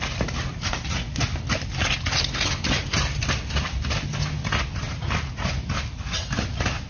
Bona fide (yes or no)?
yes